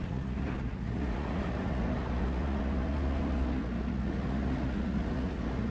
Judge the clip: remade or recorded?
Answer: remade